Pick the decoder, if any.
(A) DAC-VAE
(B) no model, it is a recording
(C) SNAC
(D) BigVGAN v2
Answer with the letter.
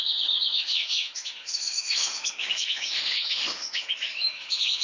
A